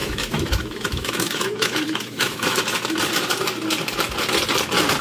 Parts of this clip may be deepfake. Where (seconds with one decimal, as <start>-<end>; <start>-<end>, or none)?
0.0-2.6